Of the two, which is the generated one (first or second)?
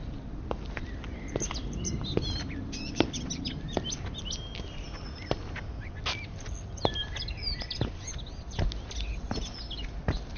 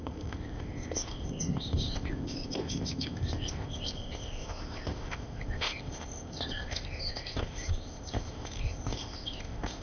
second